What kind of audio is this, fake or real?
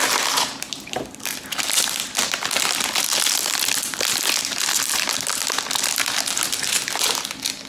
real